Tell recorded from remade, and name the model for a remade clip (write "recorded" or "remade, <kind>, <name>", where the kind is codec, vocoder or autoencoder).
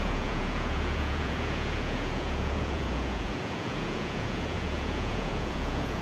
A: remade, vocoder, Vocos